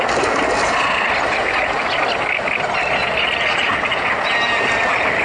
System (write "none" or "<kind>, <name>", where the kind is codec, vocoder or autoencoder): none